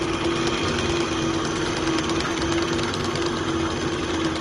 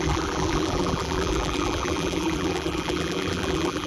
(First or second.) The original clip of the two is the first